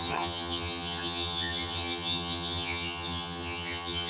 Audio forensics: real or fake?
fake